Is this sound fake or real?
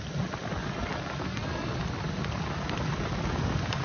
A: real